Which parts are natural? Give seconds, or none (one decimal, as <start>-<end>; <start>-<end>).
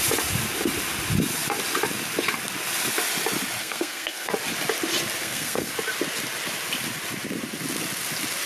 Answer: 0.0-3.6; 4.3-5.2; 5.7-8.5